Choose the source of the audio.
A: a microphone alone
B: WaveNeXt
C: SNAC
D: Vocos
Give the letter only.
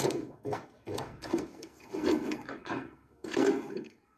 C